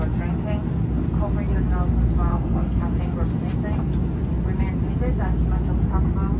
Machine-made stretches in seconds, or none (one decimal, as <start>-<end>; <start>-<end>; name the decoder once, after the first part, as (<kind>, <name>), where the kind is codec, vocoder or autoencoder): 2.3-2.8 (codec, SNAC)

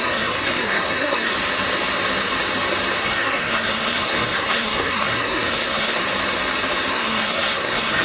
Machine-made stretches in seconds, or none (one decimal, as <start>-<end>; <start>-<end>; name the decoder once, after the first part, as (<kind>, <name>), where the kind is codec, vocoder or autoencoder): 0.0-1.3 (codec, SNAC); 3.0-6.0; 6.9-8.0

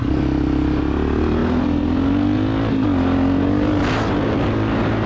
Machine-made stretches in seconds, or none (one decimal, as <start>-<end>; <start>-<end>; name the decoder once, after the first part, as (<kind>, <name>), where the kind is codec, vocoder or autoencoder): none

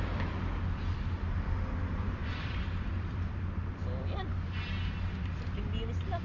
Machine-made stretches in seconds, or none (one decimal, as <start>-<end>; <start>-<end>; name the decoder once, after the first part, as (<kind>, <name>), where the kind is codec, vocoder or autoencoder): 0.0-4.3 (vocoder, BigVGAN v2); 5.2-6.2

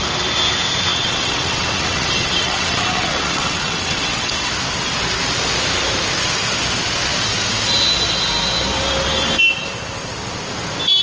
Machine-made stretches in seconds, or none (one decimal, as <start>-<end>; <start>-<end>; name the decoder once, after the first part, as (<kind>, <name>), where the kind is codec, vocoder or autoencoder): 0.9-4.5 (vocoder, WaveNeXt)

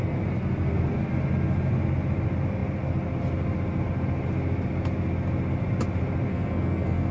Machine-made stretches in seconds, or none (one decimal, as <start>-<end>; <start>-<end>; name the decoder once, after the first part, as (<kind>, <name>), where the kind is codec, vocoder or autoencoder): 6.3-7.1 (codec, SNAC)

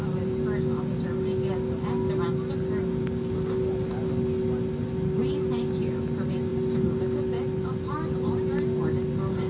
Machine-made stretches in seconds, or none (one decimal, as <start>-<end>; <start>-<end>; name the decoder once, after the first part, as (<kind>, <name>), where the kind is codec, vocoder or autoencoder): none